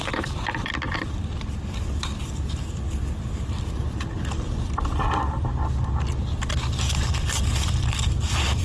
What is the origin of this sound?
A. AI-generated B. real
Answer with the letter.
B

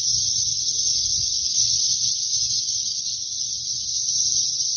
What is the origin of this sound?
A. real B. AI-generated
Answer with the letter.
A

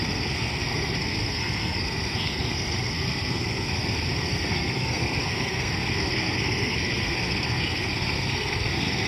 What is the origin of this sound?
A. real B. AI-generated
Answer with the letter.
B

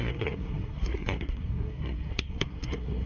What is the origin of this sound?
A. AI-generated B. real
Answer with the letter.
A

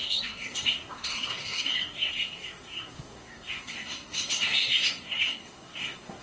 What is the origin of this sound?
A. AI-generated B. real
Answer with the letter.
A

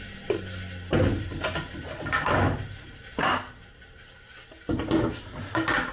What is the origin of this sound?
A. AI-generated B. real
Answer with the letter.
B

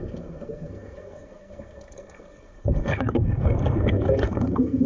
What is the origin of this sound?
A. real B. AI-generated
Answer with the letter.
B